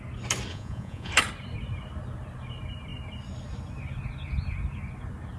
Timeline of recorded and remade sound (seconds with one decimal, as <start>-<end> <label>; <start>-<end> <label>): 0.0-0.5 recorded; 0.5-1.1 remade; 1.1-5.4 recorded